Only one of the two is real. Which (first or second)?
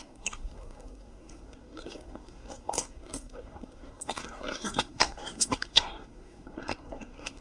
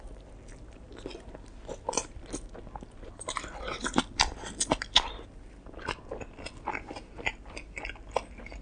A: second